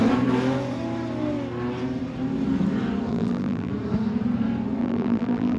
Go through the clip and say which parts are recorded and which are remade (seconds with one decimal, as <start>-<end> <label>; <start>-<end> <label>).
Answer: 0.0-3.1 recorded; 3.1-3.7 remade; 3.7-4.8 recorded; 4.8-5.6 remade